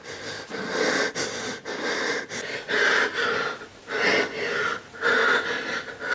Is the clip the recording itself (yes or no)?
yes